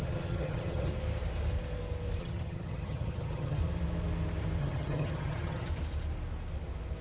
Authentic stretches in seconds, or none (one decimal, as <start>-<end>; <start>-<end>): 0.9-2.2; 3.6-4.6; 5.7-7.0